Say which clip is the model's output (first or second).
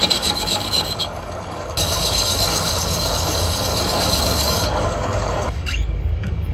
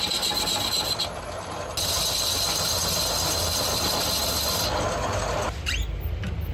first